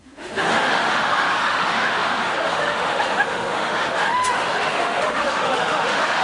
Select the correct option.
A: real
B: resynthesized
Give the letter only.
B